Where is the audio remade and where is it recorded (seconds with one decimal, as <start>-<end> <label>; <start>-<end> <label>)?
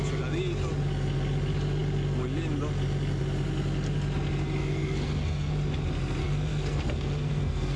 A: 0.0-4.6 recorded; 4.6-5.5 remade; 5.5-6.2 recorded; 6.2-7.8 remade